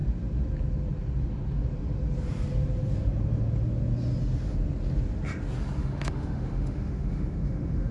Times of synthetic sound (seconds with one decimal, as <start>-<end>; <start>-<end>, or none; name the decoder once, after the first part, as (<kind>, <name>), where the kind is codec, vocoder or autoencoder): 5.8-7.9 (autoencoder, DAC-VAE)